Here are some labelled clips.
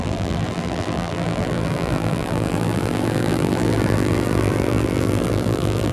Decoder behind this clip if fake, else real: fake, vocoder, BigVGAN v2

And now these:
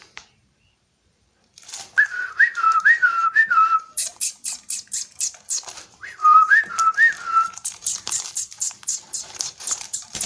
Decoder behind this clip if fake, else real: fake, vocoder, BigVGAN v2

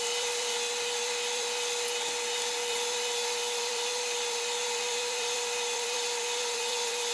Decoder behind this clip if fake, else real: fake, vocoder, BigVGAN v2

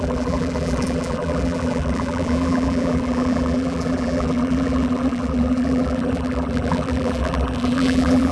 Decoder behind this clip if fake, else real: fake, vocoder, BigVGAN v2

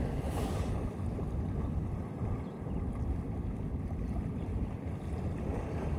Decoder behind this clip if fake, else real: real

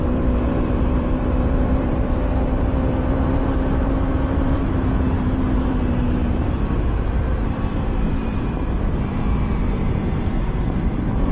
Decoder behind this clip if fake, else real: fake, vocoder, BigVGAN v2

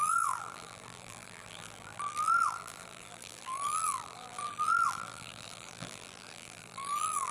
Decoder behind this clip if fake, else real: fake, vocoder, BigVGAN v2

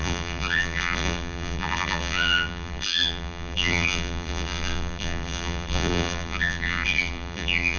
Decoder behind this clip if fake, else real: fake, vocoder, BigVGAN v2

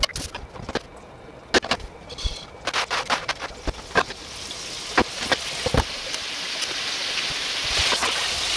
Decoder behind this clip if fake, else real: real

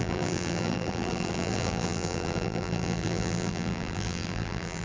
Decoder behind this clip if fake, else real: fake, vocoder, BigVGAN v2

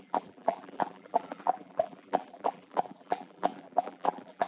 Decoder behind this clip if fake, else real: fake, vocoder, BigVGAN v2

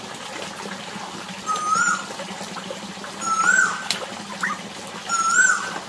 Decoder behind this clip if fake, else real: real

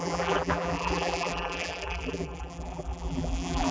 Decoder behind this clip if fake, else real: fake, vocoder, BigVGAN v2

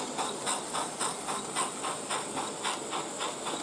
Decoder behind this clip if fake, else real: real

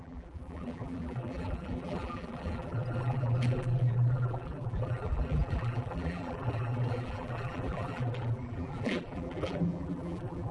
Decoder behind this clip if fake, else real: fake, vocoder, BigVGAN v2